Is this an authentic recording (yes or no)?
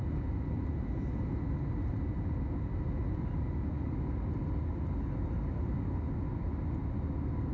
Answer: yes